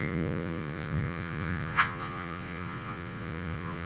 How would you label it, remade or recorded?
remade